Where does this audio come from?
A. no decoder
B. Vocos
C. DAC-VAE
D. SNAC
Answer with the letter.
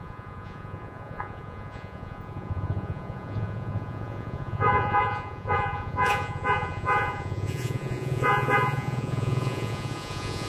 B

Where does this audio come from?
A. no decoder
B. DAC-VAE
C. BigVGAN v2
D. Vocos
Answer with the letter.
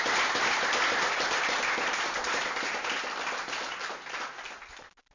A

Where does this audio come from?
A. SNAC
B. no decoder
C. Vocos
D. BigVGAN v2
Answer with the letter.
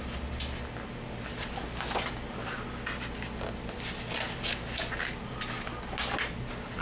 B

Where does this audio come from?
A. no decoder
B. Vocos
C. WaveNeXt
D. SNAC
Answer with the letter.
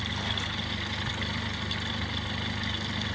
A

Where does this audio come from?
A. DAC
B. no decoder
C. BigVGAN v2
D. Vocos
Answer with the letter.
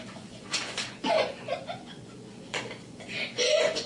D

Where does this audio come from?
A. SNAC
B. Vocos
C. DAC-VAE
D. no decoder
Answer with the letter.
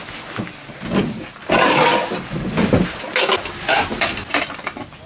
D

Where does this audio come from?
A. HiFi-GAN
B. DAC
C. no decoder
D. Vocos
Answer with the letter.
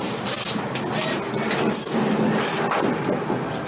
C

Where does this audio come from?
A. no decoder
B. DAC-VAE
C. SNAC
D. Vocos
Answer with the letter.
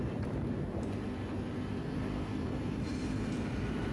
A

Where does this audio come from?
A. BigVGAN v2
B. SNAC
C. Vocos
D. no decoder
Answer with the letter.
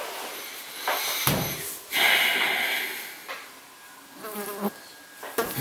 D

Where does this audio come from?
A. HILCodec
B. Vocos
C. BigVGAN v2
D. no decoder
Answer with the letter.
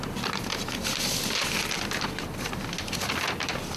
D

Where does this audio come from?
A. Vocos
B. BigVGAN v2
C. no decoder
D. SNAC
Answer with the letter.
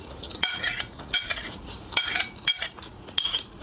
A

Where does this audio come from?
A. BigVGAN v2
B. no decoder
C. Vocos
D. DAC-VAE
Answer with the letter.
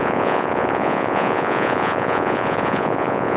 C